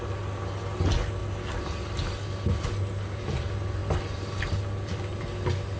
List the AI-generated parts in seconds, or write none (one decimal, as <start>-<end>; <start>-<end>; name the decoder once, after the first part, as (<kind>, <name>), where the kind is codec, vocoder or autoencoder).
none